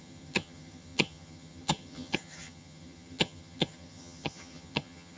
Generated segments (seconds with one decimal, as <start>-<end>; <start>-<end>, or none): 0.0-5.2